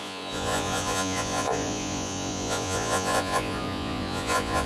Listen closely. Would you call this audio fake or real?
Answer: fake